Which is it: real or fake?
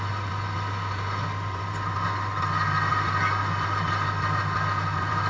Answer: real